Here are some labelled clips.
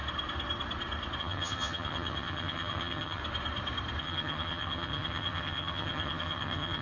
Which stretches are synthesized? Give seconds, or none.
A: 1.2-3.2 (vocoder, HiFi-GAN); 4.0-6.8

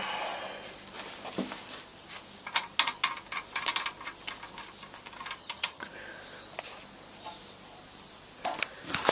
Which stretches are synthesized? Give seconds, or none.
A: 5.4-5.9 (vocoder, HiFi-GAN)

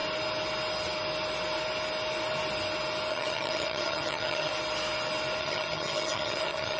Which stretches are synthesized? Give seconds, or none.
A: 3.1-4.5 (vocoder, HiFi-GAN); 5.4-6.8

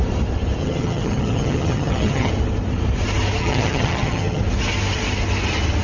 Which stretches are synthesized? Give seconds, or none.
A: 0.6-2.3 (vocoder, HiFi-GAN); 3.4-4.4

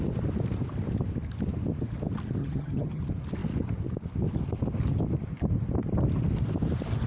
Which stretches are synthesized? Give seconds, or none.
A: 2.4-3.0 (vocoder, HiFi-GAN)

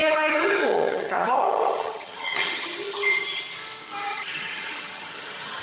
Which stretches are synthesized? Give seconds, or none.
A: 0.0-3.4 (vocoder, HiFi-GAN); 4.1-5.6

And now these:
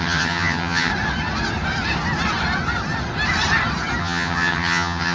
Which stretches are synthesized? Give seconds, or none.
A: 0.0-0.9 (vocoder, HiFi-GAN); 4.0-5.1

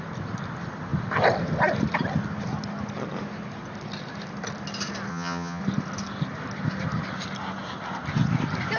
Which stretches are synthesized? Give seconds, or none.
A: 5.1-5.6 (vocoder, HiFi-GAN)